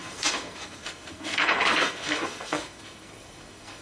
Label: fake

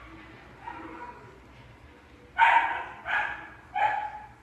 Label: real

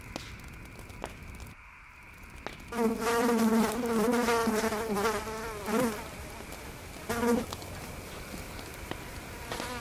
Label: real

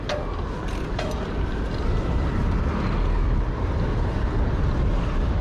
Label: real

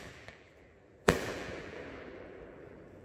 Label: fake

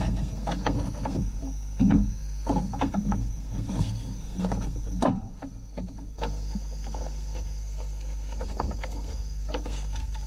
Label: fake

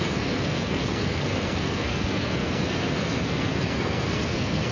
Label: fake